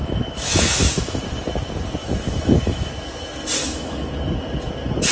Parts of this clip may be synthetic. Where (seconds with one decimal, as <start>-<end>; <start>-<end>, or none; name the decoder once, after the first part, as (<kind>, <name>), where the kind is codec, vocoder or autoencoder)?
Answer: 0.0-1.2 (autoencoder, DAC-VAE); 2.0-2.9; 3.6-4.1